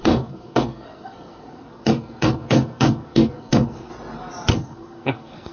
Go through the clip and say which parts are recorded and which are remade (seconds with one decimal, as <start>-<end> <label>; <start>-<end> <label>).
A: 0.0-3.9 remade; 3.9-4.5 recorded; 4.5-5.5 remade